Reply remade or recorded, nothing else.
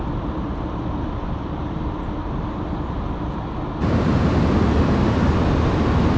recorded